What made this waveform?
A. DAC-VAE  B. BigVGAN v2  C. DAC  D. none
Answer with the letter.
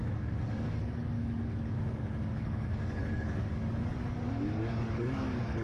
C